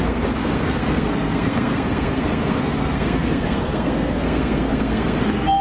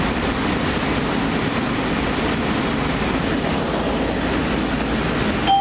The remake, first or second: first